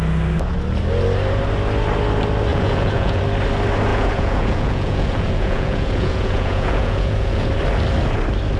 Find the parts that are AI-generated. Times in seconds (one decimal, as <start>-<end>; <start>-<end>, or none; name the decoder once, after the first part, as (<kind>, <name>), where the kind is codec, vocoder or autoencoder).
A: 2.5-3.2 (vocoder, Vocos); 3.9-7.5